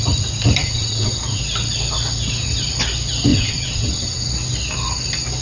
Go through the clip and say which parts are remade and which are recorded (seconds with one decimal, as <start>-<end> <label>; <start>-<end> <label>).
0.0-0.6 recorded; 0.6-1.4 remade; 1.4-3.3 recorded; 3.3-4.2 remade; 4.2-5.4 recorded